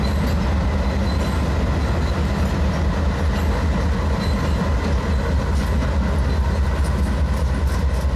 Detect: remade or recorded recorded